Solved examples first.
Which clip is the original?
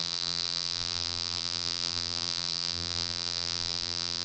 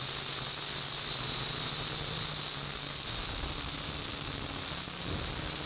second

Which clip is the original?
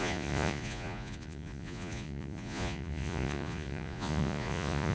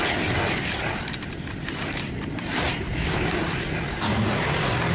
second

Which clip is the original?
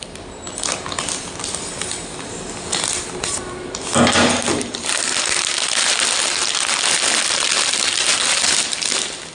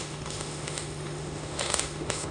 first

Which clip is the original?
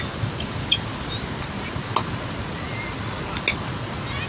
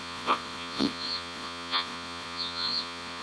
first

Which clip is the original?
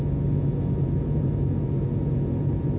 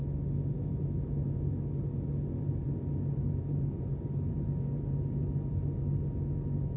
second